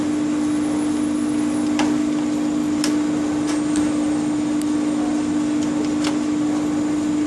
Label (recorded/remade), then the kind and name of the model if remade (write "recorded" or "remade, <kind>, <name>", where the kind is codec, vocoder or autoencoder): recorded